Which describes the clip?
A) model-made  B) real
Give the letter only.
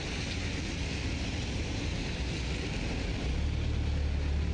B